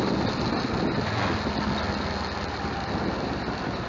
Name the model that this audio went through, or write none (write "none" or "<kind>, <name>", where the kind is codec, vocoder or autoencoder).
none